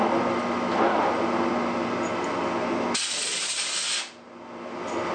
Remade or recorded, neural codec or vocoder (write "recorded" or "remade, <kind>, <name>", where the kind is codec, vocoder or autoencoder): recorded